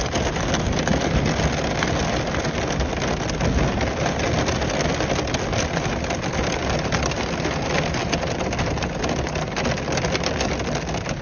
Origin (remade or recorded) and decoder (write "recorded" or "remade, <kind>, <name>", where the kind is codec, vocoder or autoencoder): recorded